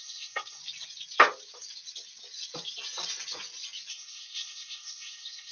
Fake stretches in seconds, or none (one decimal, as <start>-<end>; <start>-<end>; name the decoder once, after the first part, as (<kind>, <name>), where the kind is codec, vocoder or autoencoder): 0.0-0.6 (codec, SNAC); 3.9-5.5